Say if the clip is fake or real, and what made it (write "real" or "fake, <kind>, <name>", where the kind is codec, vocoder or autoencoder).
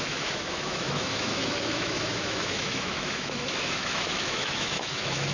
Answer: fake, autoencoder, DAC-VAE